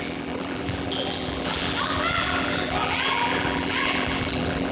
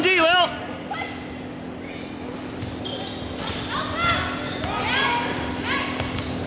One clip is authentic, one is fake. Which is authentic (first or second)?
second